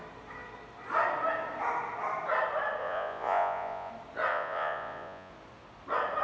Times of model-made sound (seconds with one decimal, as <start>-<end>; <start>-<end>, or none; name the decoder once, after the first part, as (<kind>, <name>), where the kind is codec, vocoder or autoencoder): 2.8-3.9 (vocoder, Vocos); 4.3-5.3